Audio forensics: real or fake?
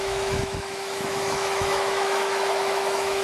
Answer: fake